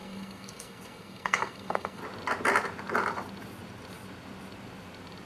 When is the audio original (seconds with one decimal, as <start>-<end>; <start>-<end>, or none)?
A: 2.0-5.3